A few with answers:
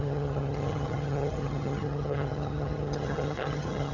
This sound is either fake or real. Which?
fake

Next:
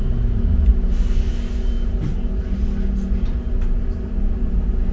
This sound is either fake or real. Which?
real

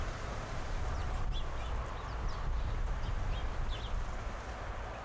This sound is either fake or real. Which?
real